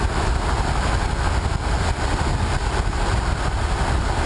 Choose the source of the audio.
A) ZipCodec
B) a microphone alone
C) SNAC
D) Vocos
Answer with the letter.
B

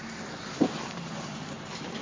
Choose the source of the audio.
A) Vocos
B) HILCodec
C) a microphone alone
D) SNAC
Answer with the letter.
C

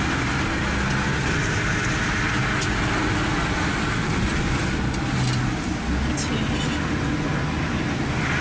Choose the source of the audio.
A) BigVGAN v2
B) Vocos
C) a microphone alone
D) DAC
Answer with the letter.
C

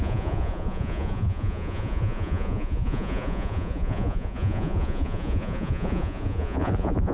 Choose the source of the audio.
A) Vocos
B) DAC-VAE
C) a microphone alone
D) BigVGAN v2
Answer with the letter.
A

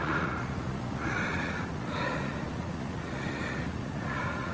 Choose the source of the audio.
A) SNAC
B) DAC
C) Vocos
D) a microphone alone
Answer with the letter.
C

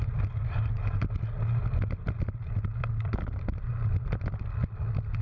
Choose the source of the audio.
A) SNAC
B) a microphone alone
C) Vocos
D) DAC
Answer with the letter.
B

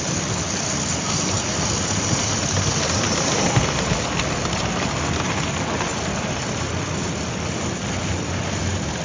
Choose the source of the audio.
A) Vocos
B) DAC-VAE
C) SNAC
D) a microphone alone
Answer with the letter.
D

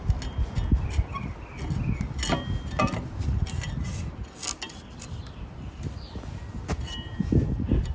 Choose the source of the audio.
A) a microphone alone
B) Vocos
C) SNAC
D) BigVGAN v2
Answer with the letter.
A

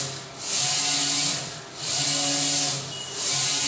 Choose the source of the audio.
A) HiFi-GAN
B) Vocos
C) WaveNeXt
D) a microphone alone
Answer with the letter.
D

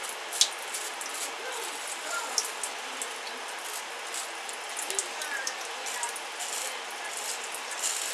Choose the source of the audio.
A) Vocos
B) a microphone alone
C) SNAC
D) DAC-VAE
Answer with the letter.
B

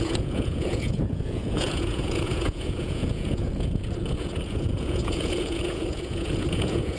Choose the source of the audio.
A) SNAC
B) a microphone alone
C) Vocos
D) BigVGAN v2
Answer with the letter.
C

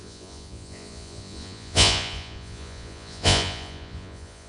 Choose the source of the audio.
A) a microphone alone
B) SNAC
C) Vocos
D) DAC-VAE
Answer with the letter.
C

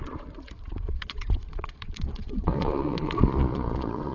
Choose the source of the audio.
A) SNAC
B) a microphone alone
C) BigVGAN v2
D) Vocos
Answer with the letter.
D